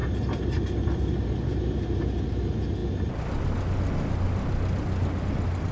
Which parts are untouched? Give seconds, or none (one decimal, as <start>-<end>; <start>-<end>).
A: 1.7-5.7